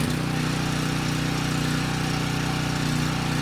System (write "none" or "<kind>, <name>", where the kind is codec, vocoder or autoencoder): none